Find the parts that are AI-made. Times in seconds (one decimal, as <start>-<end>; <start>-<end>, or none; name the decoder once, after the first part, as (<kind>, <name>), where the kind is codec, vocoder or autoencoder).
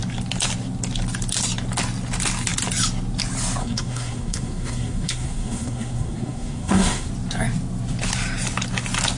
3.6-7.1 (codec, SNAC)